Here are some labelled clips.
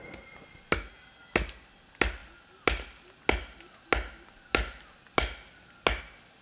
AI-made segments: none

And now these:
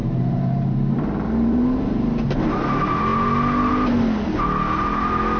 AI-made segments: 0.0-1.6

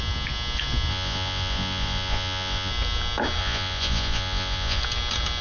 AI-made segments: 0.9-2.7; 3.4-4.8

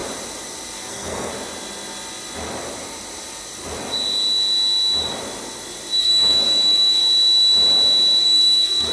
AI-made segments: 0.9-1.3; 6.0-7.0; 8.2-8.9

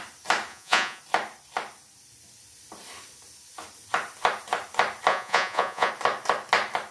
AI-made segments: 0.5-1.0; 5.1-5.9